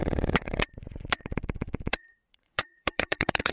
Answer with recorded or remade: remade